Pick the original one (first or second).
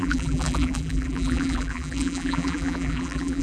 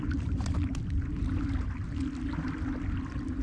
second